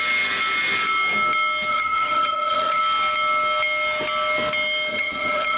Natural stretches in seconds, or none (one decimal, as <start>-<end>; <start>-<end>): 0.0-1.7; 2.8-4.9